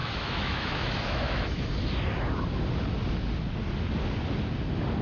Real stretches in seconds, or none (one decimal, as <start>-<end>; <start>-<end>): 1.7-5.0